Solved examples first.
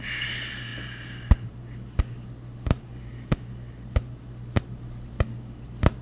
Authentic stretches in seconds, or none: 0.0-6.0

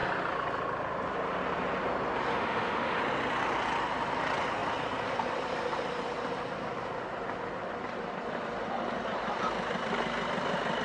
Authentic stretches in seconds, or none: 0.0-2.3; 3.0-10.8

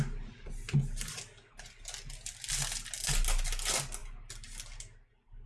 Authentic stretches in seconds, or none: 0.0-5.5

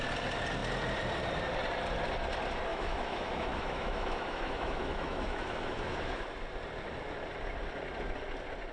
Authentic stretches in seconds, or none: 0.0-2.7; 6.2-8.7